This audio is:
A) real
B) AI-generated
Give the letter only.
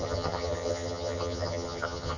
B